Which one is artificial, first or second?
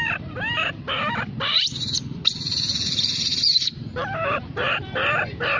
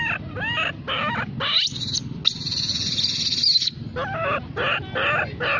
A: first